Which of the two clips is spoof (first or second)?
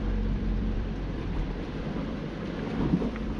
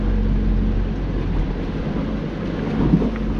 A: first